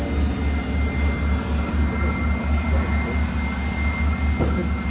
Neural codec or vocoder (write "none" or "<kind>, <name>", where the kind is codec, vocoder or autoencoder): none